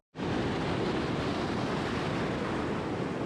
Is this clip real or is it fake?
real